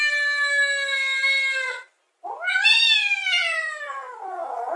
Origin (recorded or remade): recorded